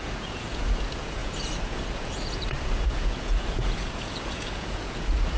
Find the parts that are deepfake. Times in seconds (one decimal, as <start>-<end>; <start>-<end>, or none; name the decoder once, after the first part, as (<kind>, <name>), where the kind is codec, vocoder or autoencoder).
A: 0.0-5.4 (vocoder, Vocos)